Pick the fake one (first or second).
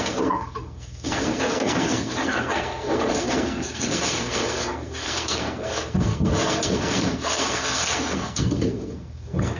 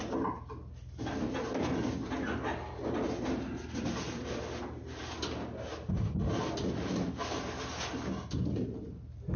first